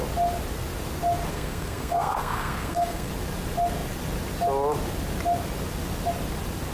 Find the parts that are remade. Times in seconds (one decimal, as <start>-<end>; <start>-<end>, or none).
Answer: 1.3-3.1